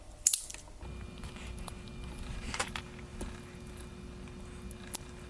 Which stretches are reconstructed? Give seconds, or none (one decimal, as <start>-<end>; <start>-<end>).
none